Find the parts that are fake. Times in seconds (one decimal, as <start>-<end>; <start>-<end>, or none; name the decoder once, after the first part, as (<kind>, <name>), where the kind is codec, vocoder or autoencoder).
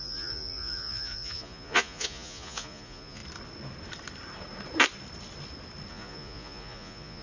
0.0-3.2 (vocoder, Vocos); 5.9-7.2